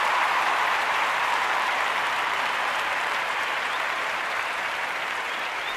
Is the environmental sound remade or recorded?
remade